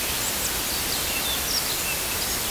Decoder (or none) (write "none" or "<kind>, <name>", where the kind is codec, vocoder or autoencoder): none